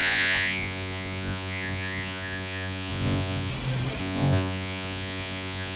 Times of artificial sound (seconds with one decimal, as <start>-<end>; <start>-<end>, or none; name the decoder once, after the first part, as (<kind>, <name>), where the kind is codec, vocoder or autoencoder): 0.0-3.5 (vocoder, Vocos); 4.0-5.8